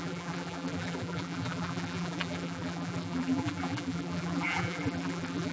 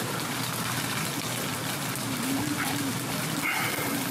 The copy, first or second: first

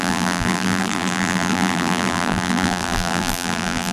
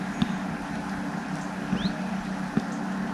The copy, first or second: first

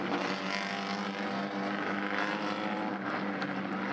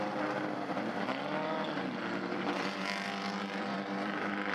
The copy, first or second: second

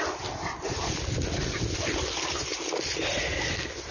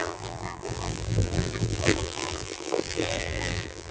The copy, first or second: second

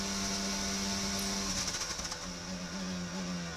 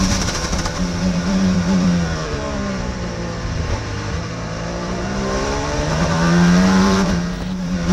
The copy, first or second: second